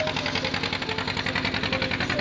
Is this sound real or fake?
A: real